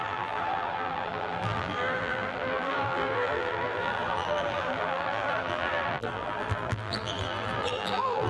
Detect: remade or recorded remade